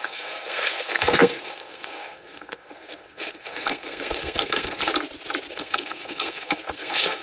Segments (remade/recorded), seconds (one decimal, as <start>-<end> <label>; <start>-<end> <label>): 0.0-4.9 remade; 4.9-5.5 recorded; 5.5-7.2 remade